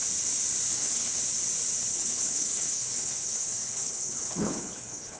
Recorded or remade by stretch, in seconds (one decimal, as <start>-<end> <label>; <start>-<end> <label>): 0.0-0.7 recorded; 0.7-1.2 remade; 1.2-1.9 recorded; 1.9-5.2 remade